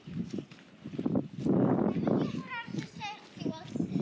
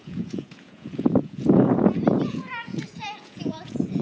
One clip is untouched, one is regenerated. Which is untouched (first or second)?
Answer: first